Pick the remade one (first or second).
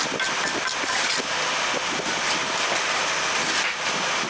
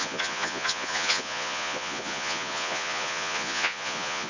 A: second